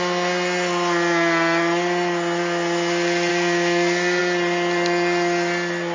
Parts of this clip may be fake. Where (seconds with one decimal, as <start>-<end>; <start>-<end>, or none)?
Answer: 3.3-4.2